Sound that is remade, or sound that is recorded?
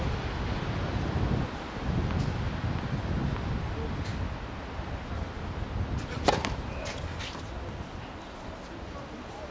recorded